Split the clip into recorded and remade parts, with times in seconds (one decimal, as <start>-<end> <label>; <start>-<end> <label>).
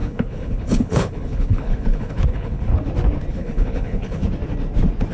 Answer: 0.0-2.7 remade; 2.7-3.3 recorded; 3.3-4.2 remade; 4.2-5.1 recorded